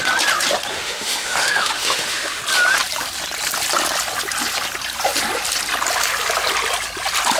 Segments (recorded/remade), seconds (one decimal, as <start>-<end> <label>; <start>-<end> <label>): 0.0-0.7 recorded; 0.7-2.4 remade; 2.4-7.4 recorded